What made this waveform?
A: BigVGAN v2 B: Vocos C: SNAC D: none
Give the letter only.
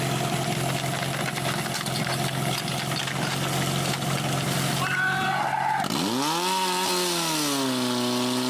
D